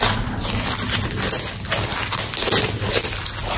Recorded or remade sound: recorded